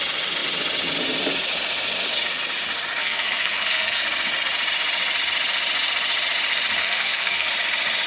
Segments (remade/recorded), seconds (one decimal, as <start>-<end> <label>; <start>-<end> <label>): 0.0-3.0 recorded; 3.0-4.0 remade; 4.0-6.8 recorded; 6.8-7.5 remade; 7.5-8.1 recorded